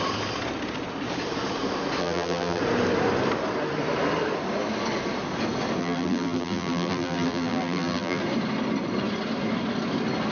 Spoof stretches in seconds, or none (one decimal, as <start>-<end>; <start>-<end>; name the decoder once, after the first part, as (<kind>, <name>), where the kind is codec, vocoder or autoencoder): 2.0-2.6 (vocoder, BigVGAN v2); 5.8-8.2